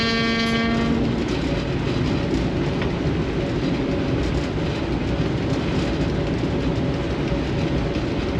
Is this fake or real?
real